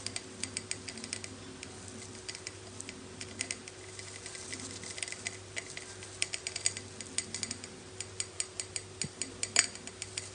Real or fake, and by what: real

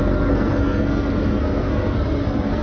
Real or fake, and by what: fake, codec, SNAC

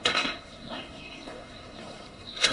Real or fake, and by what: fake, codec, SNAC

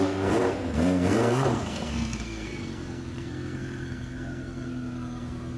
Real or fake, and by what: fake, codec, SNAC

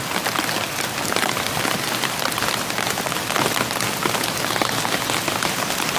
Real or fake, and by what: real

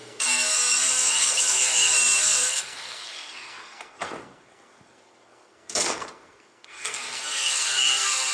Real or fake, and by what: fake, codec, SNAC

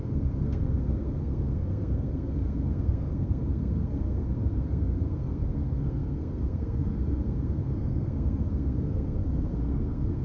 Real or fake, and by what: fake, codec, SNAC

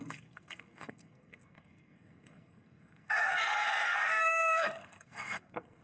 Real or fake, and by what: fake, codec, SNAC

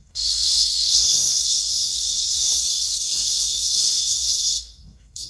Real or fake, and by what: fake, codec, SNAC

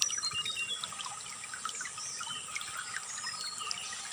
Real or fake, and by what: real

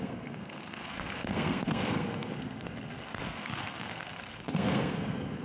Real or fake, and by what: fake, codec, SNAC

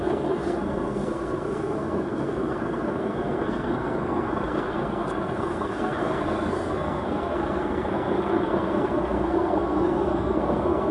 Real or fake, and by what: fake, codec, SNAC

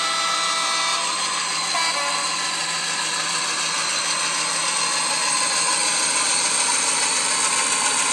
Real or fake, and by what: real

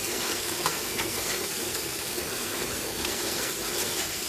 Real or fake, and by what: fake, codec, SNAC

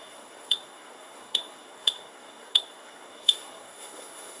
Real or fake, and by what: fake, codec, SNAC